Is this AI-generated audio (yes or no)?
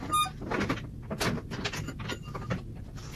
no